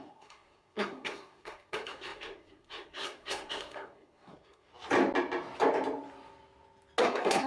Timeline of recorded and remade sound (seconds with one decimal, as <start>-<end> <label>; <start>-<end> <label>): 0.0-4.7 remade; 4.7-7.0 recorded; 7.0-7.5 remade